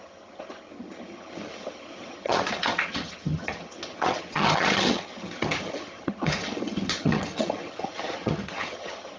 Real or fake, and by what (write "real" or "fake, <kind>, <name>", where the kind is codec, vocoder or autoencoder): fake, vocoder, HiFi-GAN